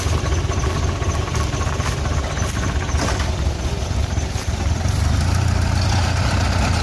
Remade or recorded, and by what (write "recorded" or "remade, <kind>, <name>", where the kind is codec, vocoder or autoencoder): recorded